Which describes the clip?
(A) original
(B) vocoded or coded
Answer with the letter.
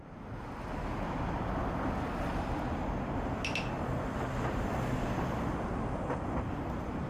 A